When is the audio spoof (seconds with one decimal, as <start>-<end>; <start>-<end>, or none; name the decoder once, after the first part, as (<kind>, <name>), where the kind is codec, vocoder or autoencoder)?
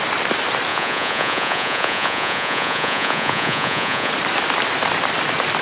0.7-4.1 (vocoder, Vocos)